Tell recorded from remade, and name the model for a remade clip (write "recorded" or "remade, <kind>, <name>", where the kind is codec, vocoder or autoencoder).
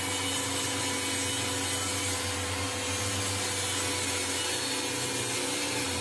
recorded